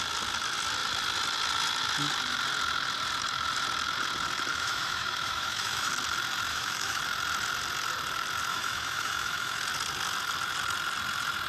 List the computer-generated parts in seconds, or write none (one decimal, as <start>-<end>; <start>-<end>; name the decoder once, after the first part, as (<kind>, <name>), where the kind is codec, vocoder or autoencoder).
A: 4.5-5.9 (autoencoder, DAC-VAE); 6.5-7.0; 8.5-9.6